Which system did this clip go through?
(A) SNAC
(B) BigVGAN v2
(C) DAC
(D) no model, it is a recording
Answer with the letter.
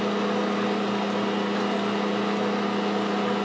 D